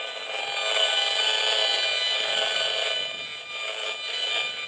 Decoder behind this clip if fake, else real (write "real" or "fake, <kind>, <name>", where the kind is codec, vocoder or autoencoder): real